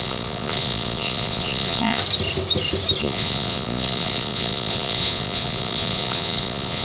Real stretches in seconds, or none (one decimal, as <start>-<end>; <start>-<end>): 2.0-3.0